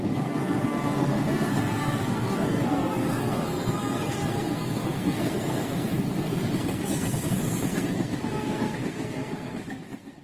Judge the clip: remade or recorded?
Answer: remade